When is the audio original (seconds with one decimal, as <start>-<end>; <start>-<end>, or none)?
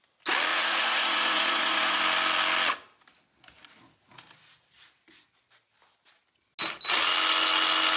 0.0-0.5; 2.0-8.0